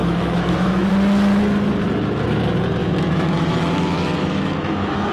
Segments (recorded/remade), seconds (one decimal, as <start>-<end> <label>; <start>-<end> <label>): 0.0-0.9 remade; 0.9-2.8 recorded; 2.8-5.1 remade